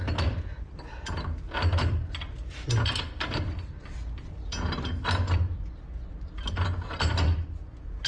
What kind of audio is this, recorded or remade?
recorded